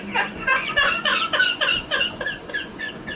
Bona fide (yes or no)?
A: no